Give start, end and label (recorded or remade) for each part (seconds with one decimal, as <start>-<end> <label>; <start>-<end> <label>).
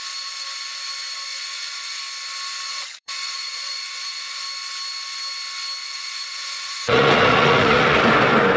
0.0-1.3 recorded; 1.3-2.0 remade; 2.0-2.7 recorded; 2.7-4.4 remade; 4.4-5.8 recorded; 5.8-8.0 remade; 8.0-8.6 recorded